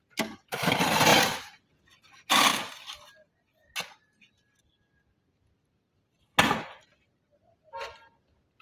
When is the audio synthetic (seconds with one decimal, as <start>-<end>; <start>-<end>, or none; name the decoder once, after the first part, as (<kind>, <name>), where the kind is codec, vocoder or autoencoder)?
1.1-1.7 (vocoder, BigVGAN v2)